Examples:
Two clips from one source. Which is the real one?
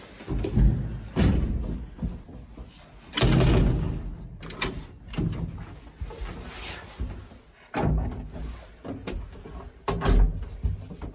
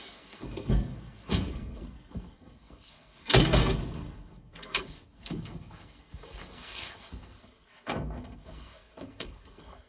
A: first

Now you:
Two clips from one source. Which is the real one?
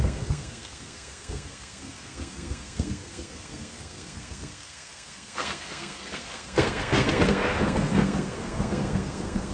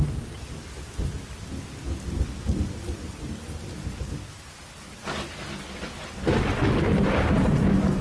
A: second